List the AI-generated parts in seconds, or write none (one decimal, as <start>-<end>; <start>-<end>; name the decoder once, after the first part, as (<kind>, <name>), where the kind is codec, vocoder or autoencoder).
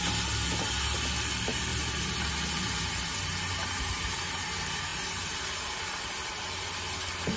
none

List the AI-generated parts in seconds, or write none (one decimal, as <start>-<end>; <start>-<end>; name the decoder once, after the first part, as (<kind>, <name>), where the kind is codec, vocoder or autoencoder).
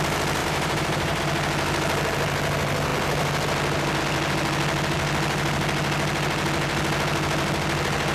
0.4-1.2 (vocoder, BigVGAN v2)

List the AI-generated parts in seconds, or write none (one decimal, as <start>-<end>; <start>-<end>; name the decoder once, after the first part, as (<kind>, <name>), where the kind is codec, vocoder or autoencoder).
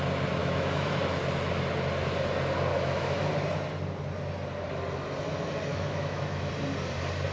0.4-1.0 (autoencoder, DAC-VAE); 2.7-3.3; 5.7-6.5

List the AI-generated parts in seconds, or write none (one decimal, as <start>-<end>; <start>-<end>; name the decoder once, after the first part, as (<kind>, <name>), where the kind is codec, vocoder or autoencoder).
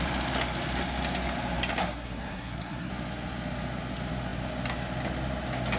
1.8-2.9 (codec, SNAC)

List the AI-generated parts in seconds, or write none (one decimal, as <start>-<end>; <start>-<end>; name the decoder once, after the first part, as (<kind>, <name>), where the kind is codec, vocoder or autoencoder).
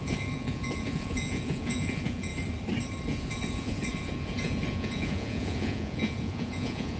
0.0-2.3 (vocoder, Vocos); 3.1-7.0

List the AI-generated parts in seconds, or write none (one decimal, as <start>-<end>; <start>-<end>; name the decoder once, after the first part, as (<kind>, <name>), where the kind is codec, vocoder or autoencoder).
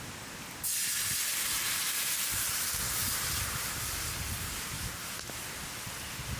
1.3-5.1 (vocoder, BigVGAN v2)